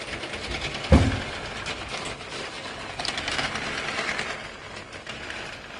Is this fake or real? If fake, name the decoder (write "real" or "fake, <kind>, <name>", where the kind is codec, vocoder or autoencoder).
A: real